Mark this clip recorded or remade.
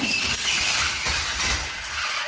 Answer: recorded